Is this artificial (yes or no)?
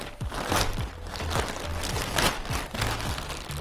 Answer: no